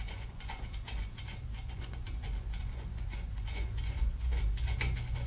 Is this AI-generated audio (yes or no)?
yes